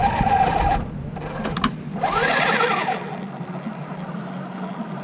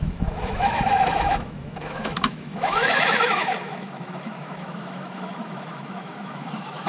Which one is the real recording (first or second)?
first